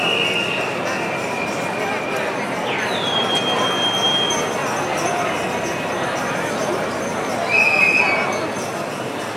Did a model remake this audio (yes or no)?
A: no